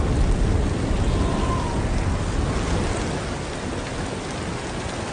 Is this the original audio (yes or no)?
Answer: yes